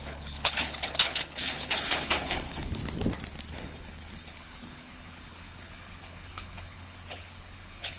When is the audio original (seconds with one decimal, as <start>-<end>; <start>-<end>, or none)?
2.8-3.5